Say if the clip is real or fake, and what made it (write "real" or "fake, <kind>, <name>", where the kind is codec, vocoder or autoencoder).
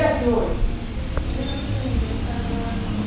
real